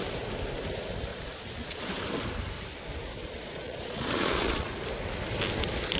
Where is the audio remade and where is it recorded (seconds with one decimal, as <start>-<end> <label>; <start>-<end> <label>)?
0.0-1.1 recorded; 1.1-1.8 remade; 1.8-3.2 recorded; 3.2-4.7 remade; 4.7-6.0 recorded